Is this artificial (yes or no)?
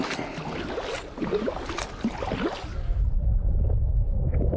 no